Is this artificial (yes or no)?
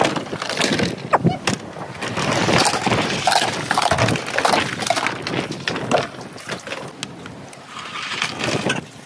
no